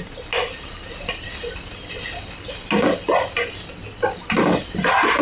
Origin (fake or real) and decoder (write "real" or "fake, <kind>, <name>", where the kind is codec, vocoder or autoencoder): real